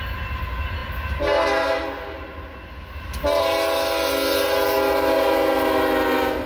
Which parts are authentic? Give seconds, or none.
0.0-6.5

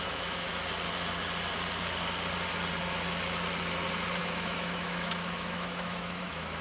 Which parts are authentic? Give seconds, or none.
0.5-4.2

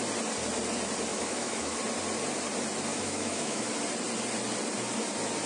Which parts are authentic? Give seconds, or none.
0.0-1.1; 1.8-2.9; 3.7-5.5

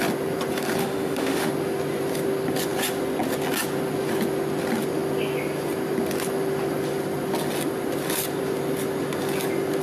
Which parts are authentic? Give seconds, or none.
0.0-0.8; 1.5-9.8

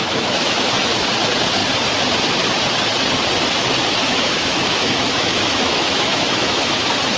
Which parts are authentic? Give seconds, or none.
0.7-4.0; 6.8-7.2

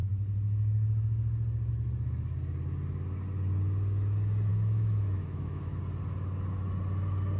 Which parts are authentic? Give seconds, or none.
0.0-4.5; 5.8-7.4